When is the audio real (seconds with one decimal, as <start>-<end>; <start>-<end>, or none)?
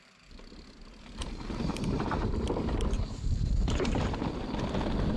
0.0-1.2; 4.3-5.2